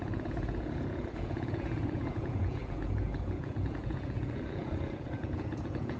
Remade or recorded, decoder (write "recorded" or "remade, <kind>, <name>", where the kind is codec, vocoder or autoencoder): remade, vocoder, Vocos